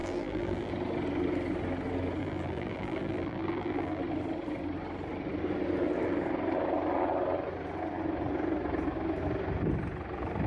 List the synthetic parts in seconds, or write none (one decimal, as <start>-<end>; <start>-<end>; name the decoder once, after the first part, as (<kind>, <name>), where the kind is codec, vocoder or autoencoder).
0.0-0.7 (vocoder, BigVGAN v2); 2.2-4.0

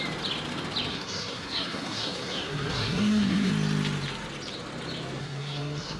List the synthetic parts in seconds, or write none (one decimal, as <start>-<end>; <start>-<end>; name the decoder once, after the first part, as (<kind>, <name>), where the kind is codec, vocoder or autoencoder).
0.9-3.5 (codec, SNAC); 5.2-6.0

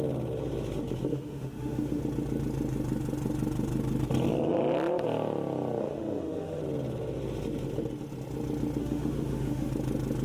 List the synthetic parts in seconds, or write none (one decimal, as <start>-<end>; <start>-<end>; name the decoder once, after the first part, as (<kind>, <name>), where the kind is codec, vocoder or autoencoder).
1.1-2.0 (autoencoder, DAC-VAE); 5.8-6.6; 8.8-9.7

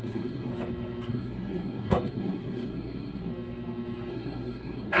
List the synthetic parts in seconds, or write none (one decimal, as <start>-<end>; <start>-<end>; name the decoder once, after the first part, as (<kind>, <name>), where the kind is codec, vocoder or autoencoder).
0.0-0.5 (codec, SNAC); 1.1-3.3; 4.1-5.0

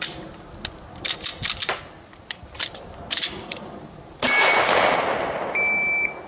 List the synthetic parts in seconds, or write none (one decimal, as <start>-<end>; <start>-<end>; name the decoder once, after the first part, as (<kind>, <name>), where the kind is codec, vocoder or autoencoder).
none

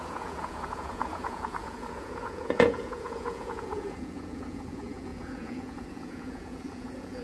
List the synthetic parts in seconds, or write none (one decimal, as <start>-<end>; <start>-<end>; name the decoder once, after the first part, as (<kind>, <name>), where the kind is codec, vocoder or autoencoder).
0.0-7.2 (vocoder, Vocos)

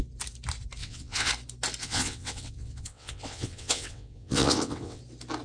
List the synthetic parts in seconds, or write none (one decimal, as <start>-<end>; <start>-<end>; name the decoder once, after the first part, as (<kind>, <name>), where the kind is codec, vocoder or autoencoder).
0.8-1.3 (vocoder, WaveNeXt); 1.8-5.0

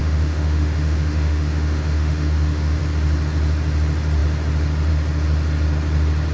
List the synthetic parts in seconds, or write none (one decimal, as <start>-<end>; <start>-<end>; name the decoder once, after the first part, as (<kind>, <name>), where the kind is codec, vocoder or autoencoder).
0.0-2.8 (autoencoder, DAC-VAE)